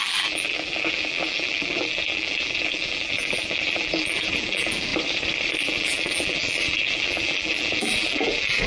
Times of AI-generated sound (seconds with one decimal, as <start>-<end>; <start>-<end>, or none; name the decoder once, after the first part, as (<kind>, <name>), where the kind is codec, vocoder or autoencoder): 0.0-4.9 (vocoder, BigVGAN v2); 5.6-8.7